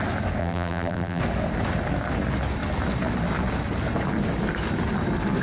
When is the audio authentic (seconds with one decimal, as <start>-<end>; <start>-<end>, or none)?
0.0-0.4; 1.2-5.4